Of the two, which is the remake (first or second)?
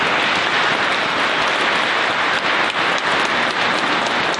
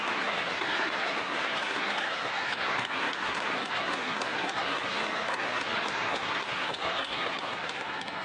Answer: second